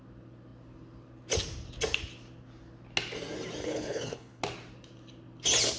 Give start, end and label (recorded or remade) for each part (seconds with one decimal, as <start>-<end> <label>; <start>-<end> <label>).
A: 0.0-3.6 recorded; 3.6-4.4 remade; 4.4-5.8 recorded